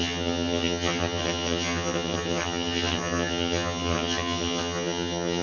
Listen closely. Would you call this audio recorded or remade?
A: remade